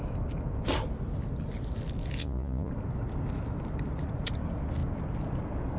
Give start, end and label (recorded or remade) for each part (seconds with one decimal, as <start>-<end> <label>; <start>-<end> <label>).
0.0-2.2 recorded; 2.2-2.7 remade; 2.7-5.8 recorded